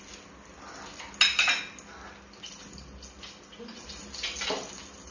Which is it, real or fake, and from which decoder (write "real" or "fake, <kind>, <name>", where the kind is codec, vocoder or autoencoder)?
real